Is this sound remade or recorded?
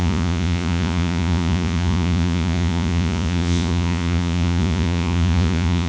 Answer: remade